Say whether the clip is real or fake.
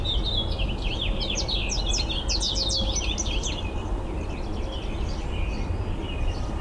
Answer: real